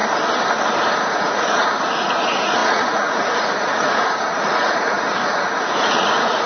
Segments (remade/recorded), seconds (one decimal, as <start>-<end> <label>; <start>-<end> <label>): 0.0-0.8 recorded; 0.8-6.5 remade